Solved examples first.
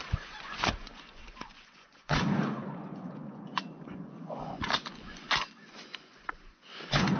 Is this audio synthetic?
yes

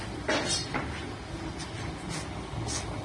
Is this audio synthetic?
no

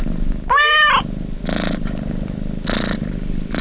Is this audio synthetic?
no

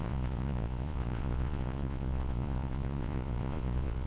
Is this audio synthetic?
yes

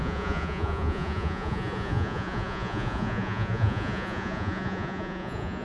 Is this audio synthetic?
yes